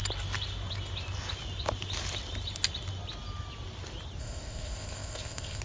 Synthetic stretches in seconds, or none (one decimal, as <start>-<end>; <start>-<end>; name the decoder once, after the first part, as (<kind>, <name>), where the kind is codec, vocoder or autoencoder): 4.2-5.6 (codec, ZipCodec)